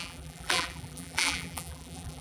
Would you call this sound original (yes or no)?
no